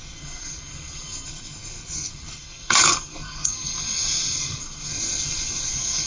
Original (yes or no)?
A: no